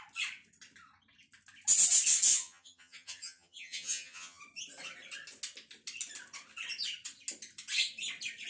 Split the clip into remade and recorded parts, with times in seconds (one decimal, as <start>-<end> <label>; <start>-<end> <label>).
0.0-2.3 recorded; 2.3-4.4 remade; 4.4-8.5 recorded